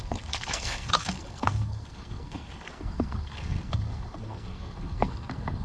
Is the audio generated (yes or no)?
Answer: yes